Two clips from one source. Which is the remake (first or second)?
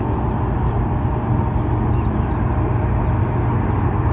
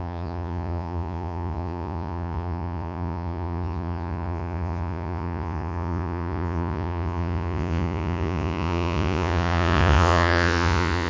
second